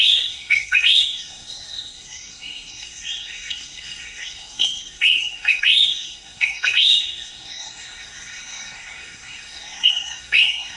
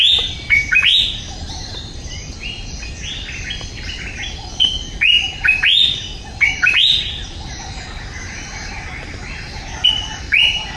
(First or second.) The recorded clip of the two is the second